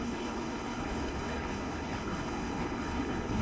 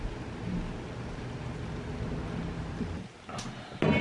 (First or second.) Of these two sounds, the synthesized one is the first